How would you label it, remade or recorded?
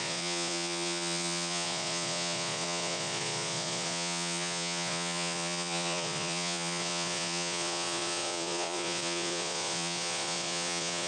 remade